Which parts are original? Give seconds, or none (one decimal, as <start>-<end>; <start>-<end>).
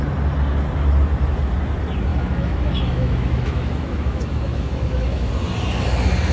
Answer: 0.0-2.1; 5.3-6.3